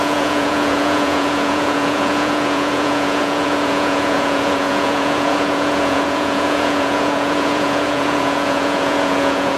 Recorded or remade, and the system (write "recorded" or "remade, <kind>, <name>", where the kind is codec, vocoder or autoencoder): remade, vocoder, Vocos